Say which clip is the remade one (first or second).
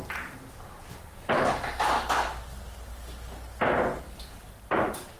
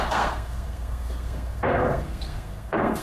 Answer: second